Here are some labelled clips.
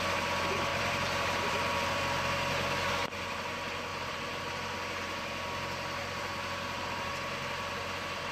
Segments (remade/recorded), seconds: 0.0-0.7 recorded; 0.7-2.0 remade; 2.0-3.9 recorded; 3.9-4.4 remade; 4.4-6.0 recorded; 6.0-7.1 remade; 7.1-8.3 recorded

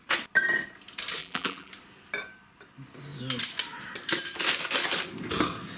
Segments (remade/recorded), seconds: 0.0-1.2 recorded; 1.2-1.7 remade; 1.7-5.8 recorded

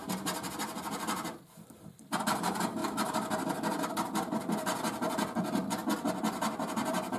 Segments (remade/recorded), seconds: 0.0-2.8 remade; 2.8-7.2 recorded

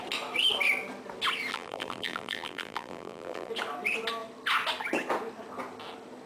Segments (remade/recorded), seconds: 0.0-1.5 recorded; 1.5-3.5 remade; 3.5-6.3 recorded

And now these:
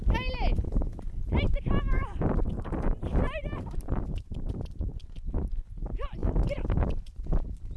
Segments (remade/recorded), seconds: 0.0-0.6 recorded; 0.6-5.3 remade; 5.3-6.2 recorded; 6.2-7.8 remade

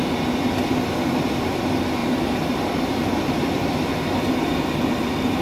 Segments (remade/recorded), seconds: 0.0-2.0 recorded; 2.0-3.8 remade; 3.8-5.4 recorded